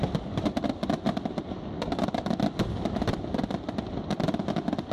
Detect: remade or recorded recorded